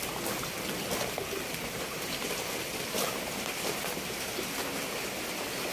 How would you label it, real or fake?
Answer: real